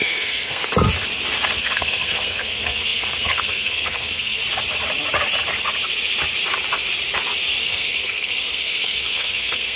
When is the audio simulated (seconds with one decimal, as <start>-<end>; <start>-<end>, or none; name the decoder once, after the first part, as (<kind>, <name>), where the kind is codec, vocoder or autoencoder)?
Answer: 0.0-0.6 (codec, SNAC); 1.6-4.4; 7.6-9.8